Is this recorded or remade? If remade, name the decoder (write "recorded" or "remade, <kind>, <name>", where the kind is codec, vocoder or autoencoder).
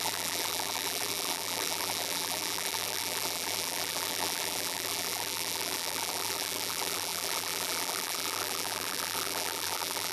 remade, vocoder, BigVGAN v2